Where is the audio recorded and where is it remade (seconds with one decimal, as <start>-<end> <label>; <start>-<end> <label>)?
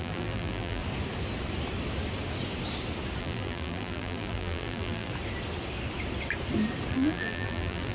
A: 0.0-0.8 remade; 0.8-3.2 recorded; 3.2-5.1 remade; 5.1-6.9 recorded; 6.9-7.9 remade